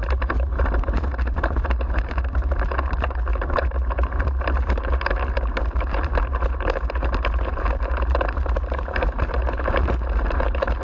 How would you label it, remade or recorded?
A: remade